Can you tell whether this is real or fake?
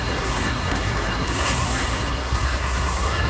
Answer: fake